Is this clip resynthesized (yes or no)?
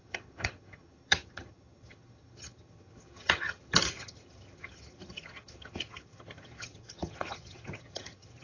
yes